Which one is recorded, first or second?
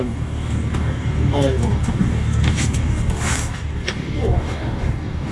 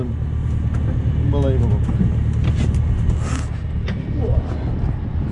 second